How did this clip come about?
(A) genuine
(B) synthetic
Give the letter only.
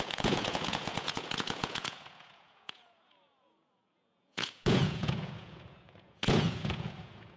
B